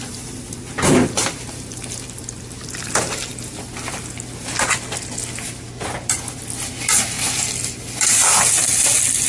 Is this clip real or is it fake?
real